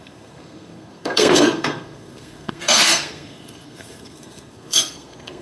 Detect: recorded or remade remade